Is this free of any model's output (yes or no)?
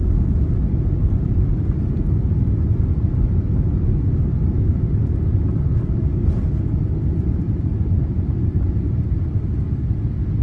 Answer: no